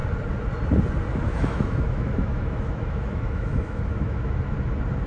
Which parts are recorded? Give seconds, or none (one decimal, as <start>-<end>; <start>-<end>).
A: 0.0-1.3; 4.4-5.1